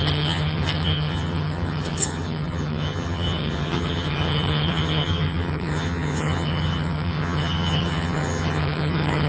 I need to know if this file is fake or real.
fake